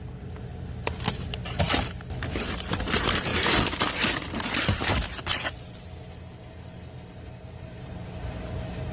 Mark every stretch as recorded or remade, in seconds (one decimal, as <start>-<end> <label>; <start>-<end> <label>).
0.0-8.9 recorded